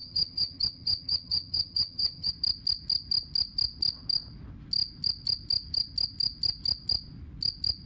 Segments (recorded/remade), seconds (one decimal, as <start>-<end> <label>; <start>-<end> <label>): 0.0-2.3 remade; 2.3-7.9 recorded